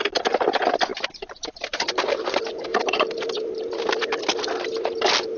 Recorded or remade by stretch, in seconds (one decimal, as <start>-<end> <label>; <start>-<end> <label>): 0.0-0.9 recorded; 0.9-3.6 remade; 3.6-5.4 recorded